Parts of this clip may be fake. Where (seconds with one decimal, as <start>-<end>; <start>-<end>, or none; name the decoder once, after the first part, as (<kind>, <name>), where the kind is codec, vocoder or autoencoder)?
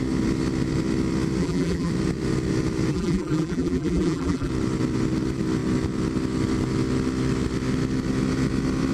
1.4-1.9 (vocoder, BigVGAN v2); 2.9-4.5